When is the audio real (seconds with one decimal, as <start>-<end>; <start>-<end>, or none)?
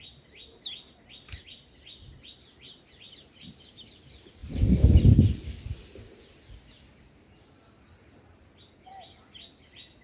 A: 0.0-10.0